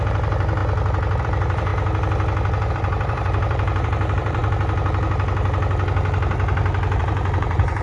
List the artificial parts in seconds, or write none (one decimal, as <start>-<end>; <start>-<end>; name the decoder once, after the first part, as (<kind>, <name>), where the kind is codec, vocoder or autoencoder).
0.0-0.6 (vocoder, BigVGAN v2); 1.2-1.7; 2.7-4.4; 7.0-7.8

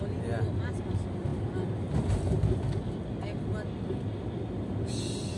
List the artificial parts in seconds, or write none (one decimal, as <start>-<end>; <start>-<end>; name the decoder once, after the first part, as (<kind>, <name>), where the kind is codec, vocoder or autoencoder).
none

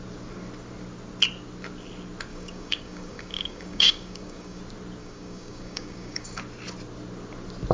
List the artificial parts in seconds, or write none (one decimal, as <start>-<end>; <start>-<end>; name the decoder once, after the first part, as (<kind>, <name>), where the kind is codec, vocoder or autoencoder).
2.3-4.6 (codec, DAC); 5.0-6.4